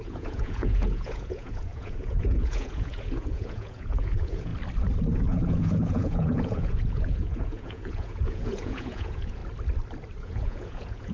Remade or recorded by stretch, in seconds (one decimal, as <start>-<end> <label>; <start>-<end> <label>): 0.0-4.5 remade; 4.5-5.2 recorded; 5.2-9.4 remade; 9.4-10.2 recorded; 10.2-11.1 remade